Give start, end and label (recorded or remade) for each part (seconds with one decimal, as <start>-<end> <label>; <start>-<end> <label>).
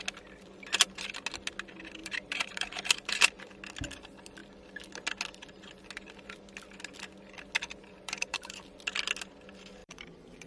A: 0.0-2.0 recorded; 2.0-3.2 remade; 3.2-7.8 recorded; 7.8-8.6 remade; 8.6-9.8 recorded; 9.8-10.5 remade